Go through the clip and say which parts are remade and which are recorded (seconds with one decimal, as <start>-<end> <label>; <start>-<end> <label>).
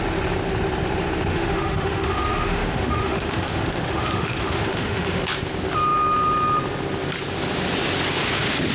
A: 0.0-1.3 recorded; 1.3-5.2 remade; 5.2-8.7 recorded